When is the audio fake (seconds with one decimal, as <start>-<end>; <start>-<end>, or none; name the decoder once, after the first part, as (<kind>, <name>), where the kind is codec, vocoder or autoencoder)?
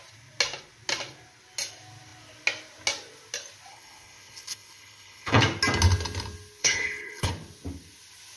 3.7-5.4 (codec, HILCodec); 6.6-7.3